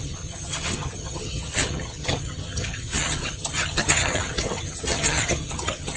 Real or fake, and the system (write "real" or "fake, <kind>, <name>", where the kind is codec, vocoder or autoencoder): fake, vocoder, HiFi-GAN